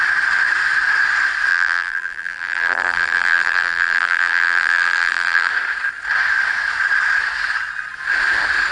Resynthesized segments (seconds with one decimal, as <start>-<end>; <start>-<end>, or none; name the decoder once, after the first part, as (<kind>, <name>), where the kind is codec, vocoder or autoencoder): 1.5-5.5 (vocoder, BigVGAN v2)